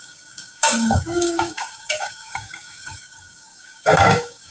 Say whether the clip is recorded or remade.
remade